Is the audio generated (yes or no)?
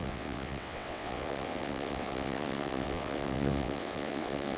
yes